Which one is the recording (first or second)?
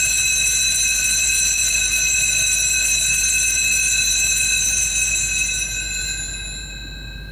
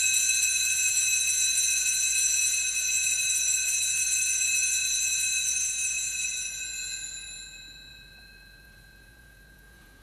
first